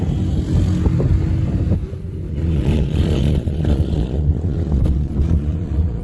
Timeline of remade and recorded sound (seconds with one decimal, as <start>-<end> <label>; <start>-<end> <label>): 0.0-2.3 recorded; 2.3-6.0 remade

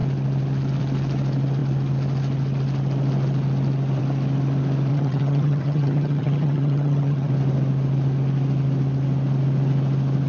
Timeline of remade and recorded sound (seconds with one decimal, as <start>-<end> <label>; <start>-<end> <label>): 0.0-4.9 recorded; 4.9-7.3 remade; 7.3-10.3 recorded

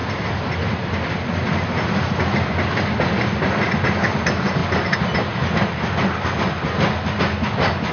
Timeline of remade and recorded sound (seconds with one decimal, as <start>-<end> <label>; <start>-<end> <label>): 0.0-7.9 recorded